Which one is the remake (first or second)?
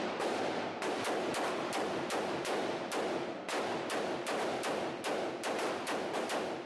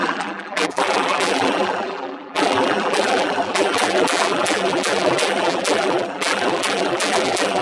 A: second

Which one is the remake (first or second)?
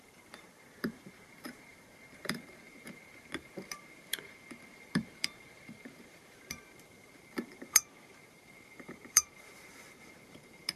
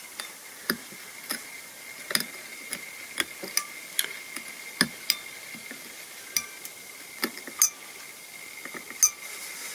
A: first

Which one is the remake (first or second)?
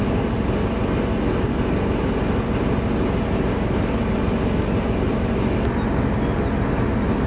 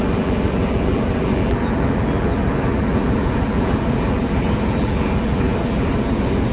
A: second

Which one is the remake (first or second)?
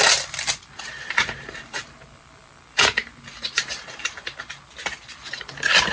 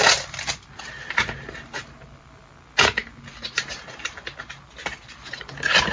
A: first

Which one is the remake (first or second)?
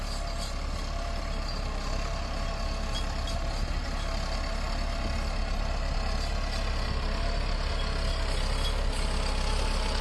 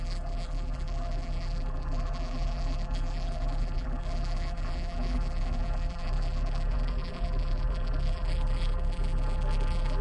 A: second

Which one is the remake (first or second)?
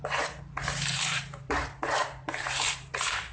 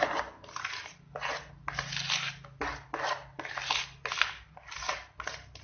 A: first